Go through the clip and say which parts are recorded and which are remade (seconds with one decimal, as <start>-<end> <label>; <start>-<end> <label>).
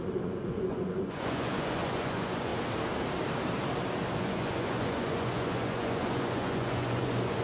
0.0-2.5 remade; 2.5-4.2 recorded; 4.2-7.4 remade